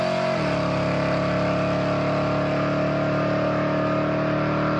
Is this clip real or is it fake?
real